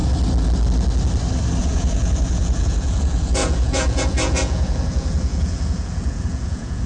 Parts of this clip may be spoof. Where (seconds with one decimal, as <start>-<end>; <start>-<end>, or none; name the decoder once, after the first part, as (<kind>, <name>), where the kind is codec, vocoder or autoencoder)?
1.6-6.9 (vocoder, Vocos)